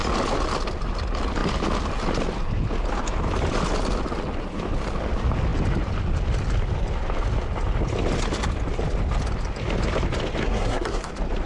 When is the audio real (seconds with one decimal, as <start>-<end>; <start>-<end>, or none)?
0.0-10.4; 11.1-11.5